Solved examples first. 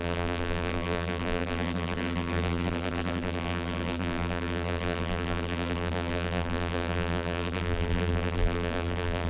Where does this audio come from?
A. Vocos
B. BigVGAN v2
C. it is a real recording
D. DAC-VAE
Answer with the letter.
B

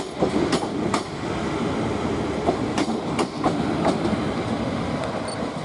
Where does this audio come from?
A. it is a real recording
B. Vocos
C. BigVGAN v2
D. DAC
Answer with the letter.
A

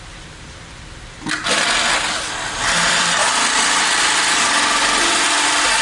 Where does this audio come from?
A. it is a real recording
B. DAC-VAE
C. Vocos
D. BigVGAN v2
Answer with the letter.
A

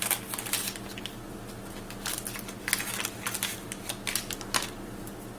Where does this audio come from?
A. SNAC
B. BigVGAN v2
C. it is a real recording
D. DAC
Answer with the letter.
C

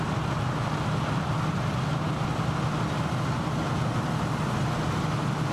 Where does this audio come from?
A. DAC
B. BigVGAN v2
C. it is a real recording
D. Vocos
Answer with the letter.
C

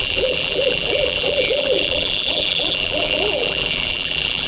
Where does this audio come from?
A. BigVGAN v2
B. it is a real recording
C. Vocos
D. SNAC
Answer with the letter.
A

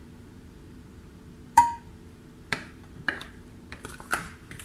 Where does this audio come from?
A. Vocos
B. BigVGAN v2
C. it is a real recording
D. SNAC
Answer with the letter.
B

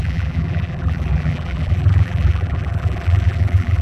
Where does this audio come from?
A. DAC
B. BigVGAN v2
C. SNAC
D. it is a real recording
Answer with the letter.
B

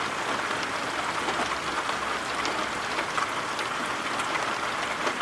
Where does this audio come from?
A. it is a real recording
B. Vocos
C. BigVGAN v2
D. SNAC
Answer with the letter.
A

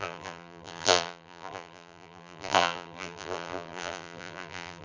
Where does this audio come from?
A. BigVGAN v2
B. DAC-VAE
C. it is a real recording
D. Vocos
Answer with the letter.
A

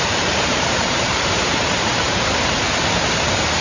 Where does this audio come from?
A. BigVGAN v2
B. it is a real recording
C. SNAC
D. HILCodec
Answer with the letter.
A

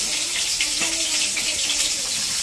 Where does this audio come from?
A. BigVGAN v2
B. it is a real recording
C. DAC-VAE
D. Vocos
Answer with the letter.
A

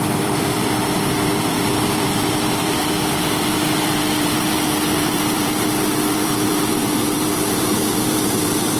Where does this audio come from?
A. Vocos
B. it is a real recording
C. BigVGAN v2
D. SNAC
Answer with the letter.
C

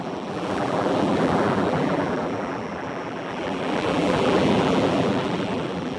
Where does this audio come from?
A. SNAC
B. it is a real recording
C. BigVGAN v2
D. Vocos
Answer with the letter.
C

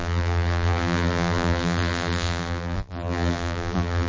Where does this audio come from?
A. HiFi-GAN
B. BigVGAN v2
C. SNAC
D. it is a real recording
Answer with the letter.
B